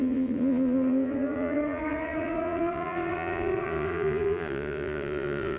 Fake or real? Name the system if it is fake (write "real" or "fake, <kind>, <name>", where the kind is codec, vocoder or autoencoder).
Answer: fake, vocoder, Vocos